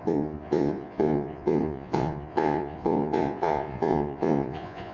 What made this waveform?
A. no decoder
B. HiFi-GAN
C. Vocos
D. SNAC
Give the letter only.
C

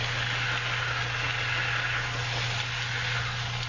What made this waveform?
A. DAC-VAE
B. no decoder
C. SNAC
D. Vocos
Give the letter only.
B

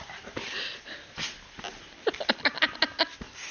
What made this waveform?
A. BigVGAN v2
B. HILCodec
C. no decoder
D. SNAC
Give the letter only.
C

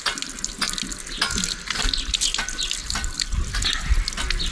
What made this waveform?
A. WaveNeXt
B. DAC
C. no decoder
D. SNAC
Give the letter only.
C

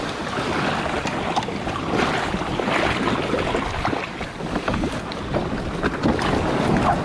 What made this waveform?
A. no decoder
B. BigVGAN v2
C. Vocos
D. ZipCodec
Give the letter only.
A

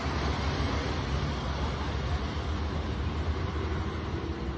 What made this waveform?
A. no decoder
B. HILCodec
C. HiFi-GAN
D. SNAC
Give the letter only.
A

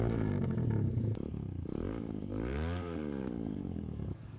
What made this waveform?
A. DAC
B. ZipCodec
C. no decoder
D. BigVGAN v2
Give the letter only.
A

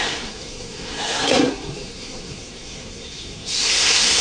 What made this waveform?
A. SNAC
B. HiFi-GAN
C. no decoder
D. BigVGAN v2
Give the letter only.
A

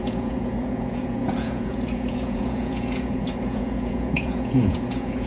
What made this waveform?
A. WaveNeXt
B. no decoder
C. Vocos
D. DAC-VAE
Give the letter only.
C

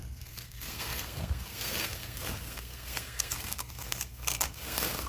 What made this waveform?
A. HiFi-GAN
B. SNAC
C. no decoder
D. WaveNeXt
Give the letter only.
B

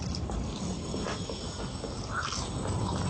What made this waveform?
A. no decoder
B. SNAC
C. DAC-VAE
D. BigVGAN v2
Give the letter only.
A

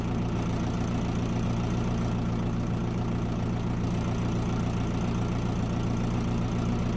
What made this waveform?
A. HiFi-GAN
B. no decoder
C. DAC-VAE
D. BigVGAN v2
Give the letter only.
B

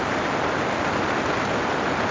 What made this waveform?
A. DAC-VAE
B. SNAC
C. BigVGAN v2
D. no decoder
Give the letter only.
D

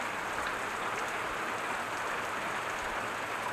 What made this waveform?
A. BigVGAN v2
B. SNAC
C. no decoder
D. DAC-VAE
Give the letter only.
C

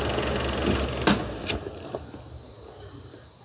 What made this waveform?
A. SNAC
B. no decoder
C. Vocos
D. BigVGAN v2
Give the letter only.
B